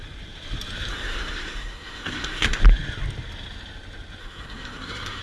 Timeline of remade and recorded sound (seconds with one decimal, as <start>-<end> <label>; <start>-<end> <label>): 0.0-0.9 recorded; 0.9-2.6 remade; 2.6-4.2 recorded; 4.2-5.2 remade